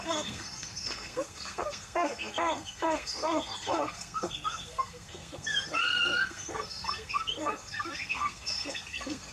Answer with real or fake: fake